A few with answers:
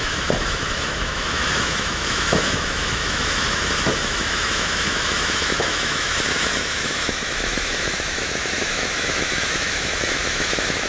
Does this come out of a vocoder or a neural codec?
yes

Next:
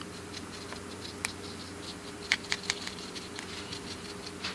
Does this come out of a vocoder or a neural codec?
no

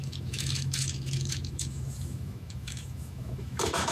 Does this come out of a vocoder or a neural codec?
yes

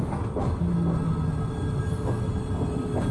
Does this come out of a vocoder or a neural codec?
no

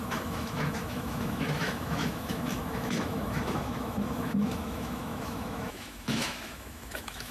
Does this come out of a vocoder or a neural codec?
yes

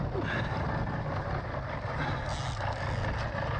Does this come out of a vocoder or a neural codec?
no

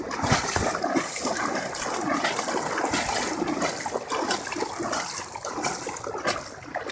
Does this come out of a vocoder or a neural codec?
no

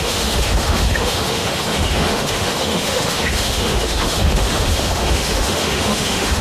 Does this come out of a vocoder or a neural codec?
yes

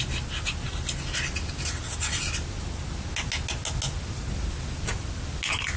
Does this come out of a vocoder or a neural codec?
no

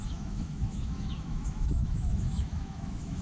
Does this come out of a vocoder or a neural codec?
yes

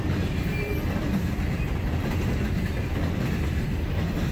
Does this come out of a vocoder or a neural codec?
no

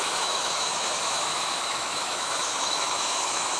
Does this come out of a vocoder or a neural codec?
yes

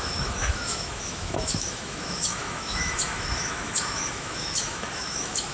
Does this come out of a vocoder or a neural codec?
yes